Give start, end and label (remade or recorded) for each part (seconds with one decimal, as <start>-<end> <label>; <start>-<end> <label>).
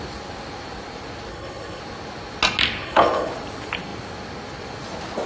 0.0-1.3 recorded; 1.3-1.8 remade; 1.8-2.8 recorded; 2.8-3.3 remade; 3.3-5.3 recorded